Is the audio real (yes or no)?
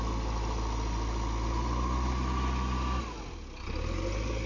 yes